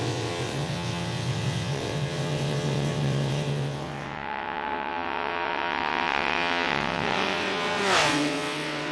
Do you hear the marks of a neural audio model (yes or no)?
yes